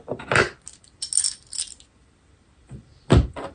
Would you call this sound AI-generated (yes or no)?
no